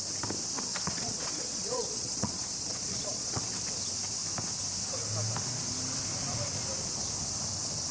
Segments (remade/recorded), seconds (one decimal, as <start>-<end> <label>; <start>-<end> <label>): 0.0-0.7 recorded; 0.7-3.4 remade; 3.4-7.9 recorded